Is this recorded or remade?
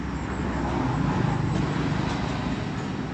recorded